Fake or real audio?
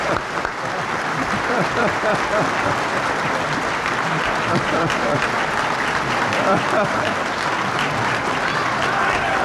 fake